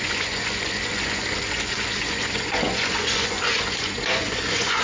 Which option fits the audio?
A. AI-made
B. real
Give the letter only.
A